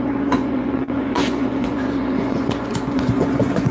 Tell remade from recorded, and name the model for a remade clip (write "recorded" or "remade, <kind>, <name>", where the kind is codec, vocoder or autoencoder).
remade, vocoder, Vocos